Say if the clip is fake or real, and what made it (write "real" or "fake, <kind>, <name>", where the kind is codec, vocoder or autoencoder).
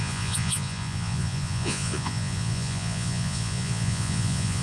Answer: fake, vocoder, Vocos